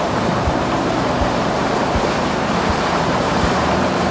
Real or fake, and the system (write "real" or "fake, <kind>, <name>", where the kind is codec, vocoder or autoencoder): fake, vocoder, BigVGAN v2